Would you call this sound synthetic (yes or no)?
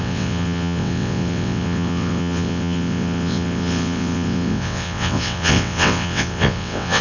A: yes